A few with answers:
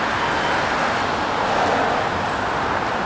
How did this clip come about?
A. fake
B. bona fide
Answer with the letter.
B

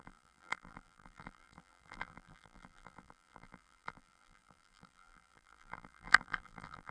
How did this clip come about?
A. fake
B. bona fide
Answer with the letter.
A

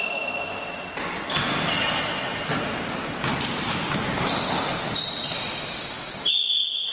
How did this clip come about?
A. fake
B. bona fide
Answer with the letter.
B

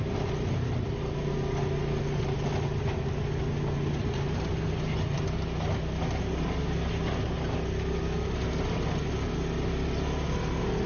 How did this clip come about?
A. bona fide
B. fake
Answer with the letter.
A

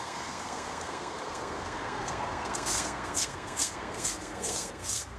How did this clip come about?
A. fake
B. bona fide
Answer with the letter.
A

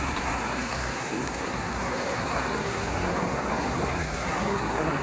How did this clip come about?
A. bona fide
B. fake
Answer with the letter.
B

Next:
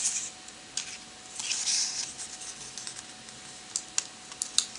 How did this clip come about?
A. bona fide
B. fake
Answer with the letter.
A